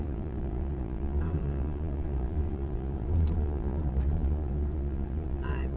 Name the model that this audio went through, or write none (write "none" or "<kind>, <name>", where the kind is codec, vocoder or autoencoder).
vocoder, Vocos